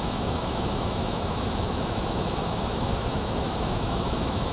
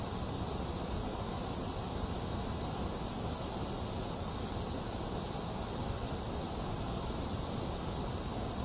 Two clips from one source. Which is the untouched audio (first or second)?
second